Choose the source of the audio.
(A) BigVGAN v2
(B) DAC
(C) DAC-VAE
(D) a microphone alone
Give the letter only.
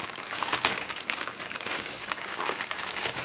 B